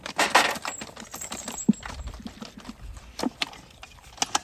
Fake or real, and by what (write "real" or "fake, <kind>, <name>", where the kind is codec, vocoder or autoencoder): real